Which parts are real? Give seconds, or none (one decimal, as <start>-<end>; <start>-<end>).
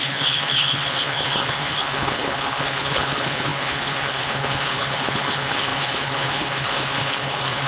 none